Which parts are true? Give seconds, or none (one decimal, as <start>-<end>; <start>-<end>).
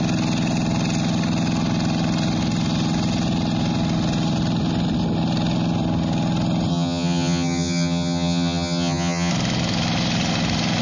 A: 0.0-6.7; 9.3-10.8